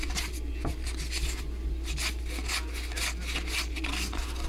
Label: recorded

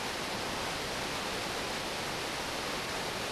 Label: recorded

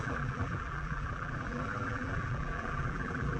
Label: remade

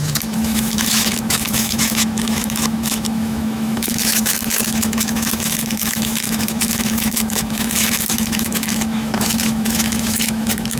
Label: remade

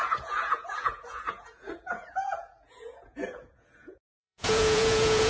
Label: remade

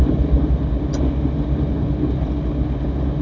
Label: recorded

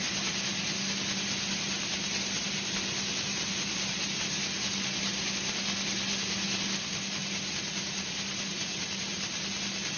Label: recorded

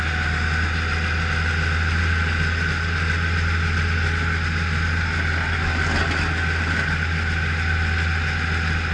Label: recorded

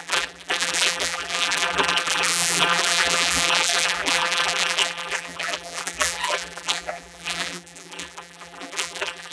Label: remade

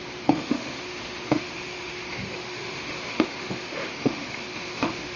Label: remade